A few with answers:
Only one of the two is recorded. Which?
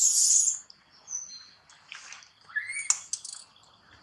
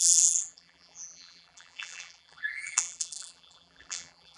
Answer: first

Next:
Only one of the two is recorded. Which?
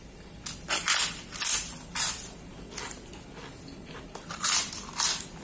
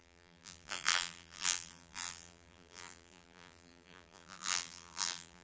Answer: first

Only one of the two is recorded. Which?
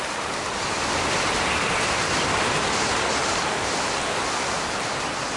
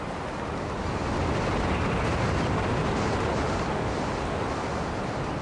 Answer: second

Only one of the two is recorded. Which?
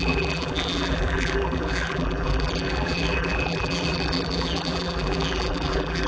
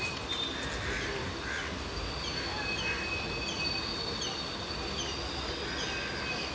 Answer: second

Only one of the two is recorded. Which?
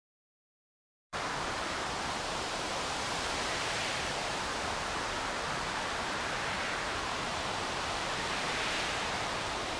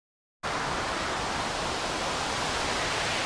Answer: second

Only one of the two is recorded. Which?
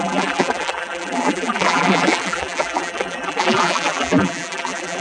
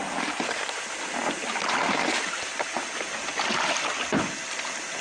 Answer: second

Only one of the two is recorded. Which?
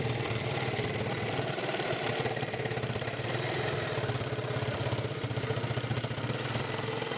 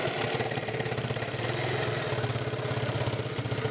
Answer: second